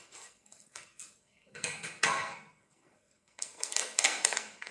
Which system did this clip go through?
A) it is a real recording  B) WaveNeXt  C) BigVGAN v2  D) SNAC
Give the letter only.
D